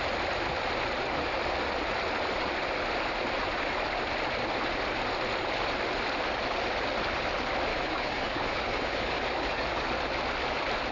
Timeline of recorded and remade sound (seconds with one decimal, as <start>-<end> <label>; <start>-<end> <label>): 0.0-7.7 recorded; 7.7-9.9 remade; 9.9-10.9 recorded